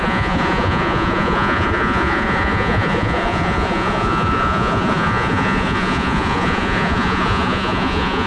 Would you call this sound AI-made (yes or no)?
yes